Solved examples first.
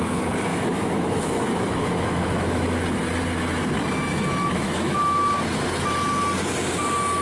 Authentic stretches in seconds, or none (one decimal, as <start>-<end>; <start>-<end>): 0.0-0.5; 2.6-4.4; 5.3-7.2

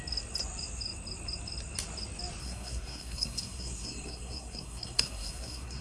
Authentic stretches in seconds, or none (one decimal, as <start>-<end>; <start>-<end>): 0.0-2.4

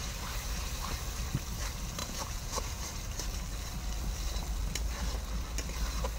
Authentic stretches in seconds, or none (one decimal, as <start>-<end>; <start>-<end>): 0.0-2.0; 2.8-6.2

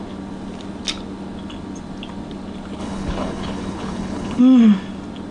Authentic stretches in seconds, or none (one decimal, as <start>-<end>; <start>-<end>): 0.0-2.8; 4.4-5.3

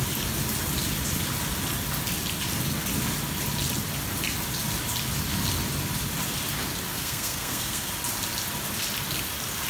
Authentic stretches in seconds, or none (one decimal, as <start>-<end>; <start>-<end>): 0.0-6.9; 7.9-9.7